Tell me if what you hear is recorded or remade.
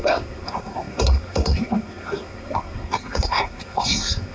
remade